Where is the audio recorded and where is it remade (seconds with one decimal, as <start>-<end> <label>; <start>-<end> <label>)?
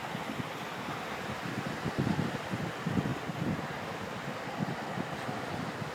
0.0-5.9 recorded